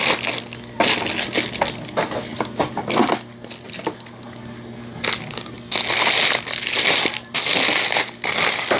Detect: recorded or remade recorded